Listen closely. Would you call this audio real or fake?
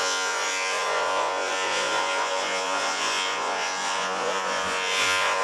fake